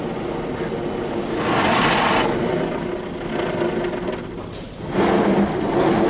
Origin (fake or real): real